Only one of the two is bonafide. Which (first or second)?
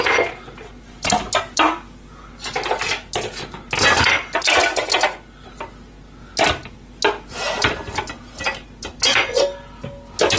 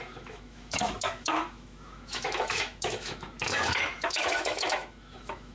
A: first